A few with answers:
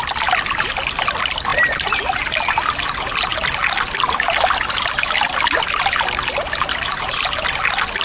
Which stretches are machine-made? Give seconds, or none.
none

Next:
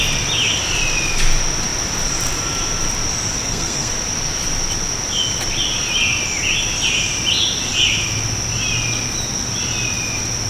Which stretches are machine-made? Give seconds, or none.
3.4-3.9

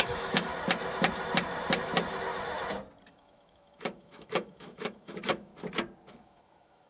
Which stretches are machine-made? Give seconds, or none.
0.0-0.5; 3.1-5.5; 6.1-6.9

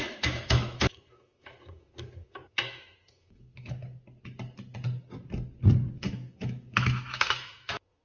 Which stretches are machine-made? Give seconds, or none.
0.0-3.8; 5.9-8.0

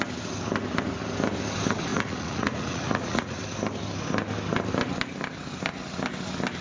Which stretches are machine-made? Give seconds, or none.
1.9-3.4